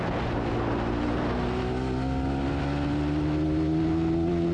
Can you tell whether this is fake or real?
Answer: real